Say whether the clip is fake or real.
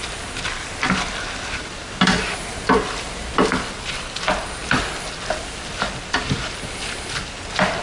real